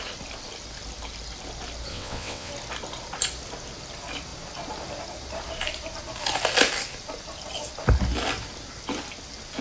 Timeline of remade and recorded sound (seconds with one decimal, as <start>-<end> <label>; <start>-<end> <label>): 0.0-1.9 recorded; 1.9-2.5 remade; 2.5-9.6 recorded